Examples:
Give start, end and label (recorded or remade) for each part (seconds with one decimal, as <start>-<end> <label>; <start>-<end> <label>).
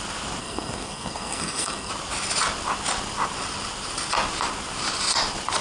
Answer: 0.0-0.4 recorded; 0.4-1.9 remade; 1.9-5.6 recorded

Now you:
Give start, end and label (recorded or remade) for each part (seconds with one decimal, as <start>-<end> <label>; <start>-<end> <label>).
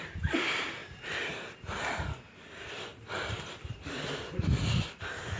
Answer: 0.0-5.4 recorded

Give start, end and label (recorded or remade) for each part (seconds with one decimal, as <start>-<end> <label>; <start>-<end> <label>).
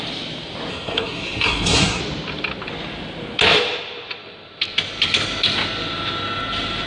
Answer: 0.0-0.7 recorded; 0.7-2.0 remade; 2.0-6.9 recorded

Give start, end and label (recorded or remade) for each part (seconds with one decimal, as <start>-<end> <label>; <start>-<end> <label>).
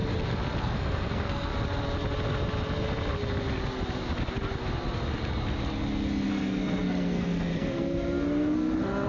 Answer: 0.0-0.6 recorded; 0.6-1.5 remade; 1.5-6.3 recorded; 6.3-9.1 remade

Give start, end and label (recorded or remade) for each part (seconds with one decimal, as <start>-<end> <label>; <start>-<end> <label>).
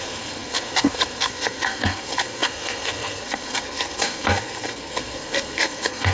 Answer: 0.0-6.1 remade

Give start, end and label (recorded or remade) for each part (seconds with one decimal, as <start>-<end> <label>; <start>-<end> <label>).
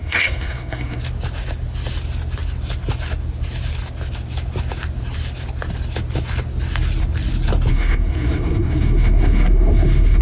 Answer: 0.0-1.0 remade; 1.0-7.7 recorded; 7.7-10.2 remade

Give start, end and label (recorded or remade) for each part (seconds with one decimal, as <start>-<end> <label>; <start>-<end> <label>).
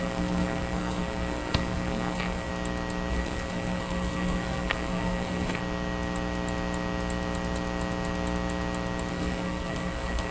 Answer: 0.0-2.5 remade; 2.5-3.1 recorded; 3.1-5.6 remade; 5.6-9.1 recorded; 9.1-10.3 remade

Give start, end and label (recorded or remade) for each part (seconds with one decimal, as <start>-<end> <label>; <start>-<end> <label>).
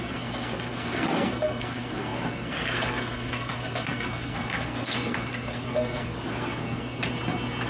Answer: 0.0-7.0 remade; 7.0-7.7 recorded